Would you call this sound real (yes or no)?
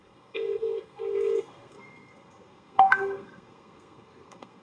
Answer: no